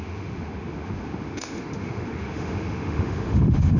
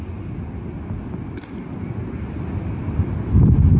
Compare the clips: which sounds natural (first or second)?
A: second